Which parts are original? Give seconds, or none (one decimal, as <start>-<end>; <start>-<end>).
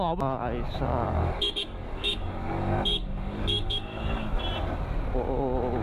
0.0-0.9; 4.4-5.8